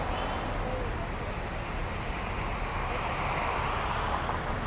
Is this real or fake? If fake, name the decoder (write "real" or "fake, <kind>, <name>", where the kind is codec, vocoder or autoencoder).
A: real